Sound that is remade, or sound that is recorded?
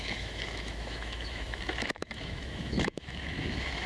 remade